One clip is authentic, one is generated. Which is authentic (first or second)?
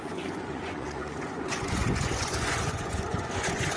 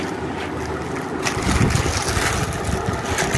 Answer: second